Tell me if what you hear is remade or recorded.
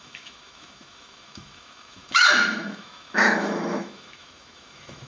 remade